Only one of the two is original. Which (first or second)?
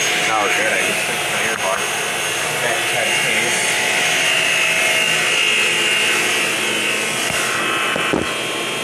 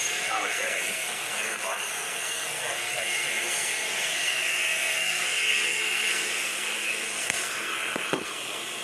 first